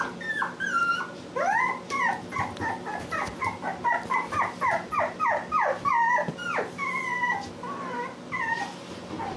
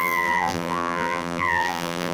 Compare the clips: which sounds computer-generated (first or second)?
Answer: second